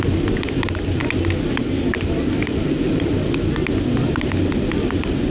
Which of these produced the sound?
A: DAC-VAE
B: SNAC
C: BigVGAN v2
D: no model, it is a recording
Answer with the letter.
D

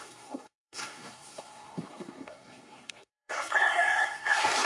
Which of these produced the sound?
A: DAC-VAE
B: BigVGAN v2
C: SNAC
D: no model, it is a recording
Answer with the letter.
C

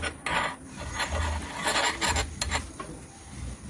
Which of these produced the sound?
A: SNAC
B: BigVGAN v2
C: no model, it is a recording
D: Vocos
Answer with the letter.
C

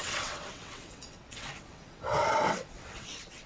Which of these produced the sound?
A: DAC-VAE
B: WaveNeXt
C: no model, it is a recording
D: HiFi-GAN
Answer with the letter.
B